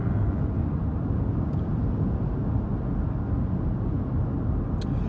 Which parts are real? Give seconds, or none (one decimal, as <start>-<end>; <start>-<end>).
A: 0.0-5.1